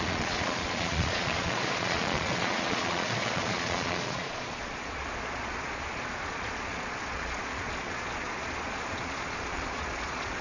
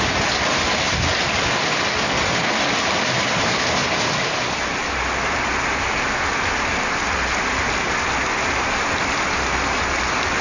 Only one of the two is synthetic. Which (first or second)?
first